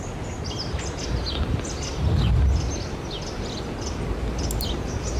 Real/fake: real